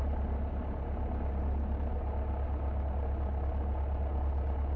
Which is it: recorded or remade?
recorded